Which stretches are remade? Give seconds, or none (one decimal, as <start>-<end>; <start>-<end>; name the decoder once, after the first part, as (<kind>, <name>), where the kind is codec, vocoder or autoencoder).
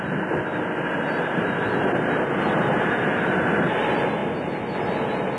none